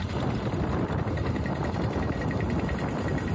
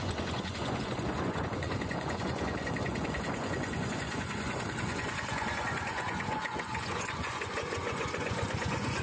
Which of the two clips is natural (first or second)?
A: first